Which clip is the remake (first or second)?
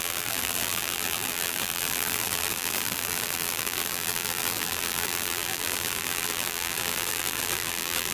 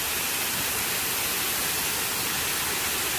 first